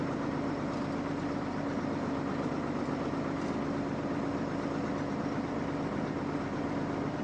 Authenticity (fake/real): real